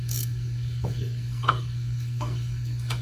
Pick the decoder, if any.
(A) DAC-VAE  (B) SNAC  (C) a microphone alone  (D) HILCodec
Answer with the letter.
B